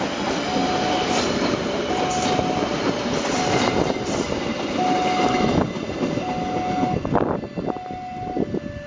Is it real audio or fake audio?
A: real